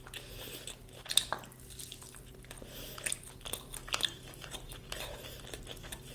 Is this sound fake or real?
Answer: real